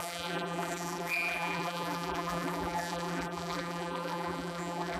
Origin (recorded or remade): remade